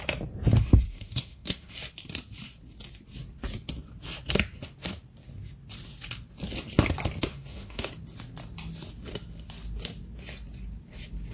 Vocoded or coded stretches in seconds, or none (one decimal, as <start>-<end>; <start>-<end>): 0.9-1.7; 7.3-7.9